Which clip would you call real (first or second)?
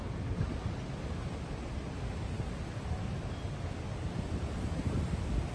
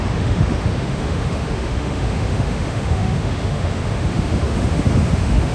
first